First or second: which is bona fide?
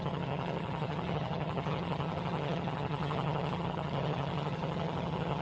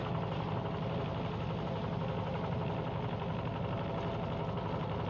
second